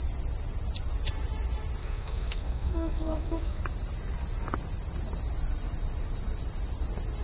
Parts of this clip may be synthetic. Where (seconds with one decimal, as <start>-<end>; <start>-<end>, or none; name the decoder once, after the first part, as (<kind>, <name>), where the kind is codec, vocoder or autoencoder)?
1.8-3.6 (codec, SNAC)